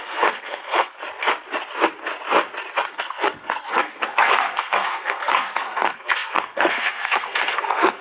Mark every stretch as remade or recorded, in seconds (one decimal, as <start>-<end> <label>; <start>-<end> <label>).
0.0-1.0 remade; 1.0-2.9 recorded; 2.9-8.0 remade